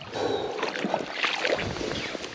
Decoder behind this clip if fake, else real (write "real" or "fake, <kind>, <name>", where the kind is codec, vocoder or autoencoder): real